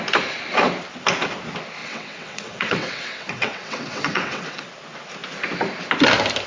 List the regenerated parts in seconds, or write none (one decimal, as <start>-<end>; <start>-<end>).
1.8-4.7